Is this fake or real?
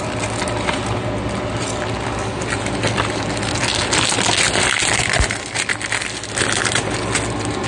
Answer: real